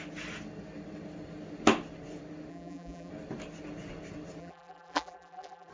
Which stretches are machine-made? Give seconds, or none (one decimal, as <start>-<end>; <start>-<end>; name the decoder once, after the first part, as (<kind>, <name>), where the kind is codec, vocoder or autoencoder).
2.5-3.1 (vocoder, BigVGAN v2); 4.4-5.7